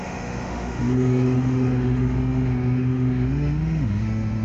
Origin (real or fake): fake